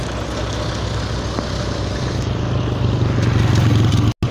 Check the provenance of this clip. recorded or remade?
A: recorded